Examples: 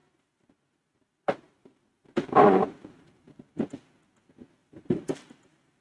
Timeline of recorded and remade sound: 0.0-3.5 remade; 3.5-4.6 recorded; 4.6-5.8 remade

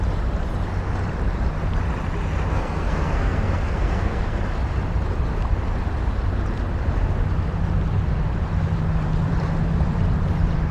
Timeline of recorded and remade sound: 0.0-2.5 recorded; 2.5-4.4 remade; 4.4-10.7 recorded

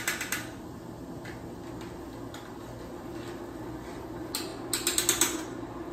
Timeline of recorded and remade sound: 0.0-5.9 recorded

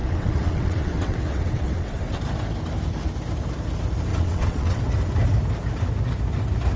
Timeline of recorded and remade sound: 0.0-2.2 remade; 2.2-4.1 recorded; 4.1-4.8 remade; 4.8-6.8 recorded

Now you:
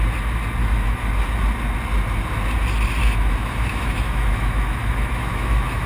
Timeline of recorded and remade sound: 0.0-0.6 recorded; 0.6-1.1 remade; 1.1-3.0 recorded; 3.0-5.9 remade